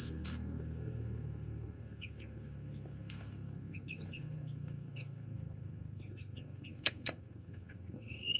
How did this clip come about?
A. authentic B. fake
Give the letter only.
B